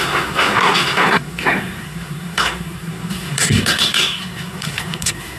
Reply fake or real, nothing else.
fake